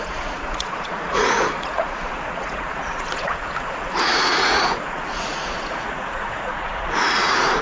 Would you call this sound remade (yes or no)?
yes